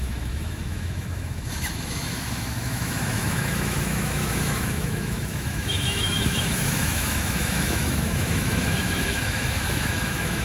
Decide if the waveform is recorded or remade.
remade